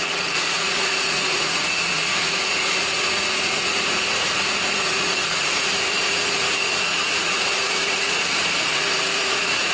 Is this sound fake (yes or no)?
yes